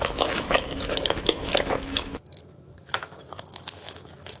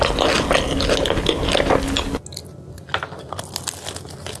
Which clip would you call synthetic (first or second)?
first